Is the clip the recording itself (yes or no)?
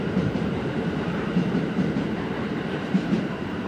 no